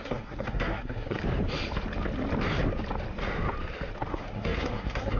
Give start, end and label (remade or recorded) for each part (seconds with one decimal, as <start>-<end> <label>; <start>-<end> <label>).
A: 0.0-1.2 remade; 1.2-4.1 recorded; 4.1-5.2 remade